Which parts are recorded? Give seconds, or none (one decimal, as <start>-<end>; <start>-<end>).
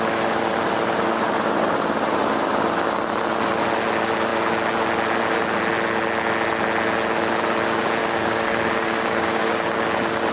0.0-8.0; 9.5-10.3